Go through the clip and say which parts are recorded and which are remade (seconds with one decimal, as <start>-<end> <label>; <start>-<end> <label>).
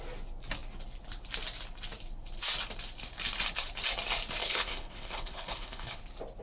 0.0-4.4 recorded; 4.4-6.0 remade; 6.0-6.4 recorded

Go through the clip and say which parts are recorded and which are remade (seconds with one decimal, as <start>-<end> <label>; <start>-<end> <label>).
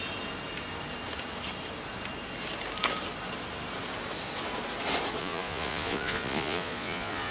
0.0-5.2 recorded; 5.2-7.3 remade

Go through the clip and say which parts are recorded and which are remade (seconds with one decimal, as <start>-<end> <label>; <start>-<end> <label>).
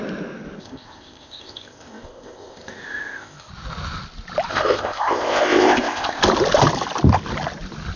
0.0-0.6 recorded; 0.6-3.5 remade; 3.5-4.5 recorded; 4.5-6.2 remade; 6.2-8.0 recorded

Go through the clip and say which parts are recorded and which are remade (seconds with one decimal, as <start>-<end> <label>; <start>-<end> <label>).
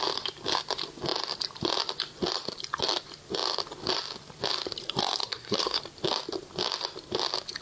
0.0-5.2 recorded; 5.2-5.8 remade; 5.8-7.6 recorded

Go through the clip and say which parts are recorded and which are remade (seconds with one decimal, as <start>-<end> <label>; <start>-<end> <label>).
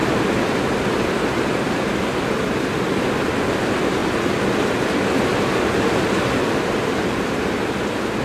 0.0-4.0 recorded; 4.0-5.1 remade; 5.1-8.2 recorded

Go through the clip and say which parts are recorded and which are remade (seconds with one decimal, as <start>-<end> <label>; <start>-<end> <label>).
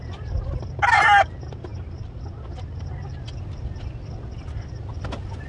0.0-5.5 recorded